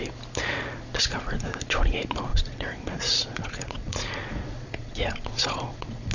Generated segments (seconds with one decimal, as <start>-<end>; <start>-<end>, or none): 2.3-6.1